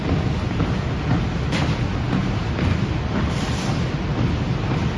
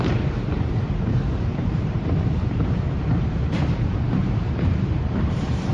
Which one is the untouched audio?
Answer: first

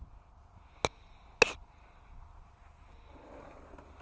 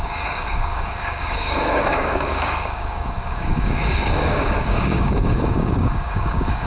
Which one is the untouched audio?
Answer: first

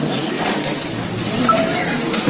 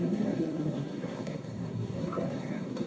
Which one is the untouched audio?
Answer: first